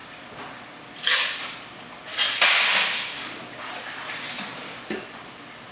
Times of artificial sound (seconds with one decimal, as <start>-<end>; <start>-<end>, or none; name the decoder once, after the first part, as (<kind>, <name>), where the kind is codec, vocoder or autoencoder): none